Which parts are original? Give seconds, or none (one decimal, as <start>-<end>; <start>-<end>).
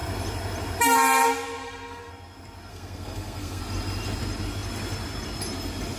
0.0-1.6; 2.1-2.7; 3.6-6.0